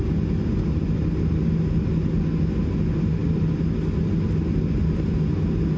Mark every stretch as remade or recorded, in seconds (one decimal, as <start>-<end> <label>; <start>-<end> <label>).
0.0-5.8 recorded

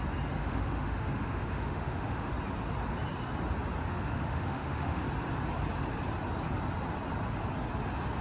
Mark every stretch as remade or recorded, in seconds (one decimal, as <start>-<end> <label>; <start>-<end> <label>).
0.0-0.4 recorded; 0.4-2.3 remade; 2.3-3.8 recorded; 3.8-5.0 remade; 5.0-8.2 recorded

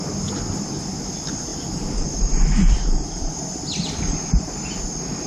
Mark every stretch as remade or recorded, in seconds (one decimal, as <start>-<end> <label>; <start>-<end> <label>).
0.0-5.3 recorded